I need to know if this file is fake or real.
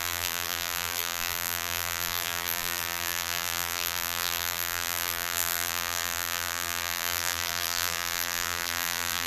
fake